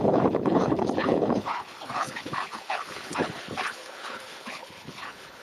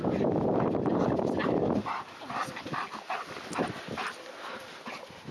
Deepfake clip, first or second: first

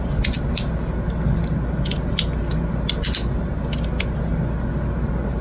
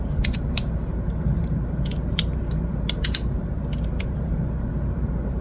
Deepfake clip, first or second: second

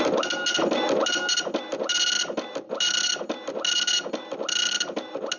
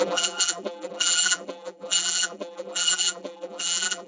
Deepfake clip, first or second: second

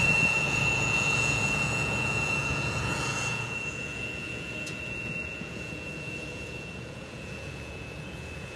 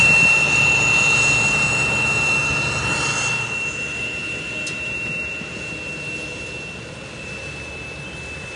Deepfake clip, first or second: first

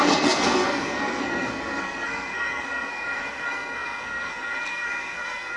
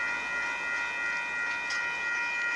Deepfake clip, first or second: first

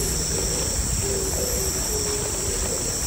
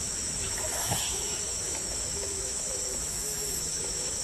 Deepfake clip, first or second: second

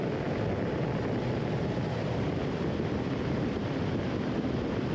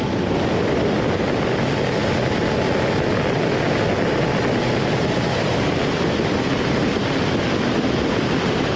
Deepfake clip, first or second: first